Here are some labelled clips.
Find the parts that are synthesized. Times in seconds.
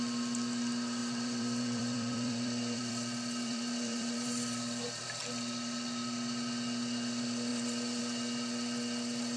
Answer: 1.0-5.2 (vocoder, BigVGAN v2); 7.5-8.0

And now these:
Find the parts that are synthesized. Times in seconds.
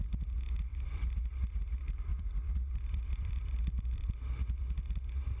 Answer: 0.7-1.6 (vocoder, BigVGAN v2); 2.1-4.4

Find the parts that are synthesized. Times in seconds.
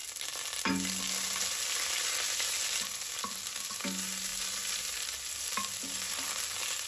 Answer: none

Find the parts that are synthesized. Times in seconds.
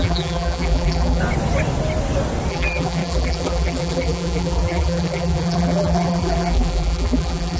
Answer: 0.0-1.2 (vocoder, BigVGAN v2); 2.5-7.6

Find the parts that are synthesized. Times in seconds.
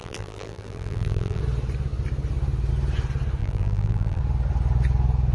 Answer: 0.0-1.4 (vocoder, BigVGAN v2); 3.4-4.2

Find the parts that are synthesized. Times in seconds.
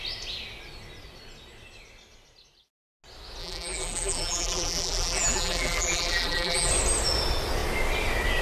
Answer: 3.4-6.7 (vocoder, BigVGAN v2)